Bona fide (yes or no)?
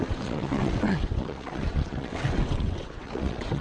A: no